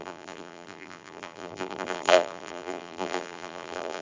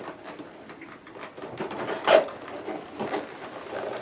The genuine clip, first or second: second